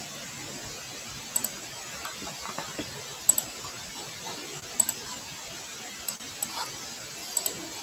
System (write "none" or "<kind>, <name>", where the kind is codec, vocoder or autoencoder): none